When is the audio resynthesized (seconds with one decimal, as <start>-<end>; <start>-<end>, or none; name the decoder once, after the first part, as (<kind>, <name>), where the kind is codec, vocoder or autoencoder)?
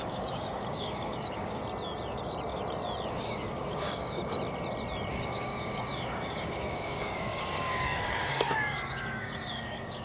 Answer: 0.0-1.6 (codec, DAC); 3.1-4.2; 5.1-10.0